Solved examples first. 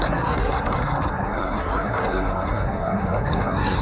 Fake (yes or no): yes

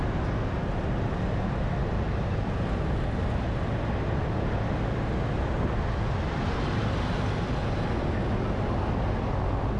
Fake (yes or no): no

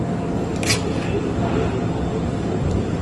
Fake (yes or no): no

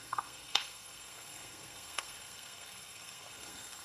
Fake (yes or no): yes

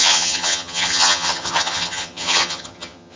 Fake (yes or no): yes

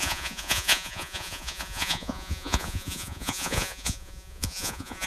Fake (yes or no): yes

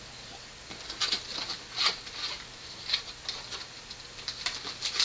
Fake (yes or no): no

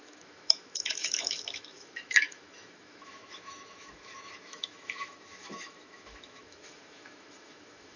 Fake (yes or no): yes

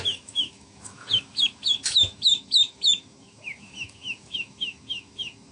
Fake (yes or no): yes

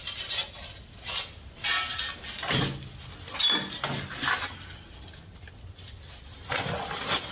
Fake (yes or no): no